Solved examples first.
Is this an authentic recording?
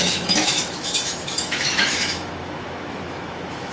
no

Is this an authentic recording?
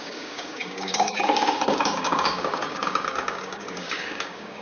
no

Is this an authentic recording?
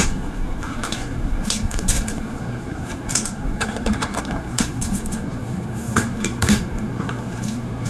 no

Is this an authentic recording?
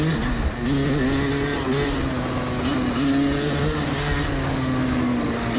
yes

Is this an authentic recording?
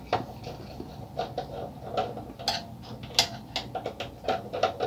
yes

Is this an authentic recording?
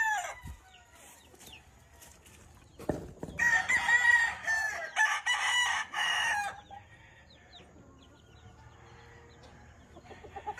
yes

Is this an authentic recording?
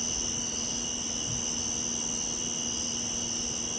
yes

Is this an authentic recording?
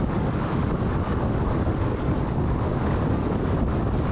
no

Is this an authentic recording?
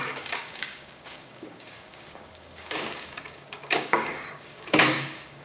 no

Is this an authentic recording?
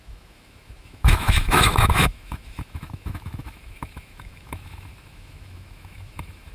no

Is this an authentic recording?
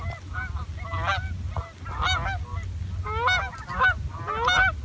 yes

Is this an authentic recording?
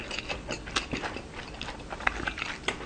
yes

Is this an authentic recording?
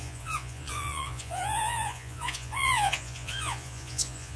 no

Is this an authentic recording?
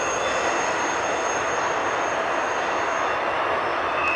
yes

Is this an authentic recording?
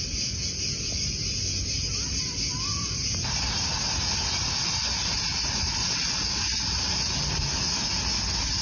yes